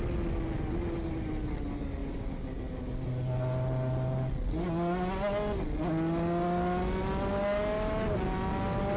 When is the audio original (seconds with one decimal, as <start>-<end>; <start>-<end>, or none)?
0.0-9.0